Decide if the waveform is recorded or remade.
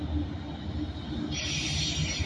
recorded